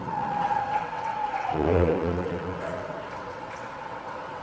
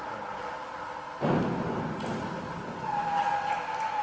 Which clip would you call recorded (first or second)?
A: second